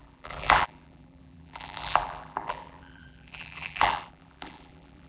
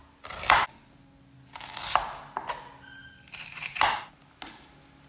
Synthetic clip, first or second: first